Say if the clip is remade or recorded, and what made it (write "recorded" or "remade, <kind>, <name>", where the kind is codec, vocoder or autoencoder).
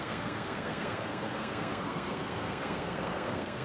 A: remade, codec, SNAC